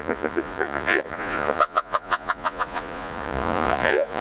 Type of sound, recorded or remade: remade